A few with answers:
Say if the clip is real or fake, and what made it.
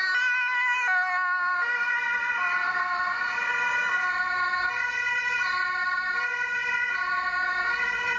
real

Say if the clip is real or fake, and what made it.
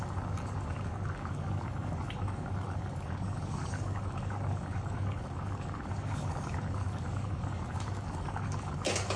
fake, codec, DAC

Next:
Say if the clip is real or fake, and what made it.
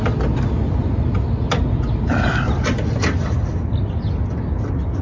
real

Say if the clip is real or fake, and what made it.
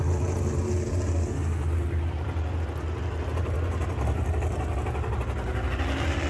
real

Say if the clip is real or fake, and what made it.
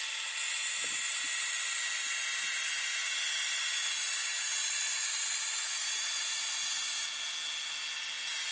real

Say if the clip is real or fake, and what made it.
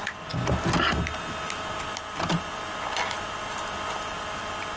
real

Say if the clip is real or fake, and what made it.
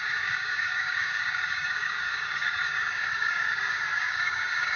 fake, codec, DAC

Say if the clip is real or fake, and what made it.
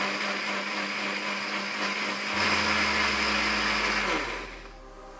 real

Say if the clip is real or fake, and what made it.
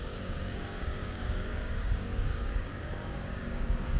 fake, codec, DAC